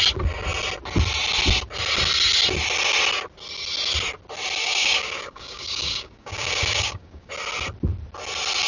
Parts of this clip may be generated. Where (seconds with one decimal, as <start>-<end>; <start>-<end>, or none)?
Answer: 4.6-7.3